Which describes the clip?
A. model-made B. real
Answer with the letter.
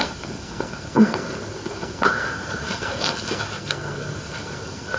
A